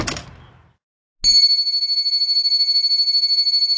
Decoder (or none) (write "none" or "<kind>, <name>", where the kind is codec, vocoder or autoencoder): none